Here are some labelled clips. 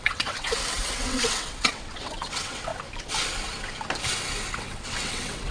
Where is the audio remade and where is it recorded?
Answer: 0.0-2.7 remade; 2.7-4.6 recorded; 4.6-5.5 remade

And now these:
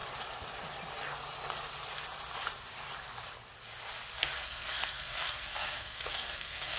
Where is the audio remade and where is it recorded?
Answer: 0.0-4.4 recorded; 4.4-6.8 remade

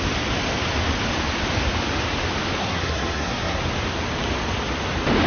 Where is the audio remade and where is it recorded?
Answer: 0.0-2.6 recorded; 2.6-3.6 remade; 3.6-5.3 recorded